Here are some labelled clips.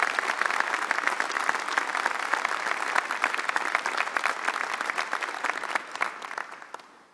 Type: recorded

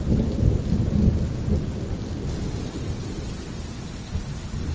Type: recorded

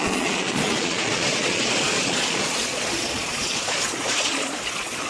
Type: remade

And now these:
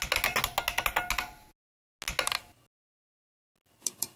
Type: recorded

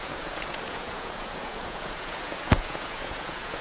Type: remade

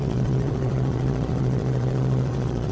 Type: remade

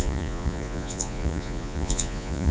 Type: remade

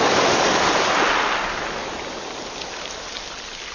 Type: recorded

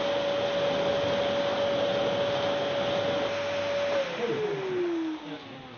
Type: recorded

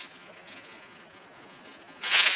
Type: remade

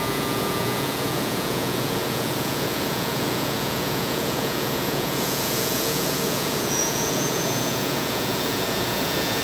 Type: remade